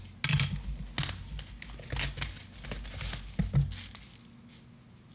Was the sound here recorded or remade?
recorded